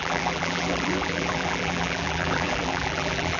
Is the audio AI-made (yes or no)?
yes